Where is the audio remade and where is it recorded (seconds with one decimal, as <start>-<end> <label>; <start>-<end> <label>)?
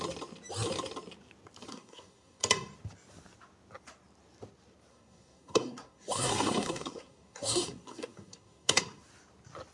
0.0-1.7 recorded; 1.7-2.4 remade; 2.4-4.9 recorded; 4.9-8.8 remade; 8.8-9.7 recorded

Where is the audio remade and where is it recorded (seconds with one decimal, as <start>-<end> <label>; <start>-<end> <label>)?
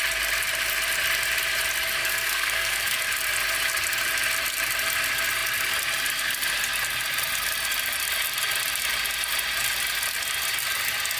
0.0-2.0 recorded; 2.0-3.0 remade; 3.0-11.2 recorded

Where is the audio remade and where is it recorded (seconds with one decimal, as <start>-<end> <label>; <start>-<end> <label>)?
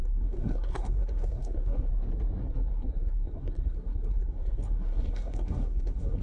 0.0-1.9 remade; 1.9-2.4 recorded; 2.4-6.2 remade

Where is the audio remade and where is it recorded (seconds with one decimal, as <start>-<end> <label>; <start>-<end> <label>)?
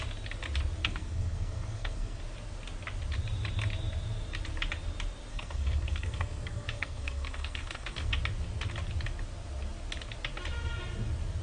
0.0-0.8 recorded; 0.8-2.2 remade; 2.2-5.3 recorded; 5.3-8.1 remade; 8.1-11.4 recorded